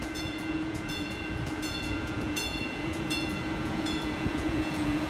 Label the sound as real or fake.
fake